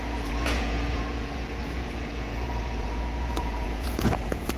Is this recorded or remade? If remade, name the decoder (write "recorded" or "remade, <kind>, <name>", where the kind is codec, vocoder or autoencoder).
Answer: remade, vocoder, Vocos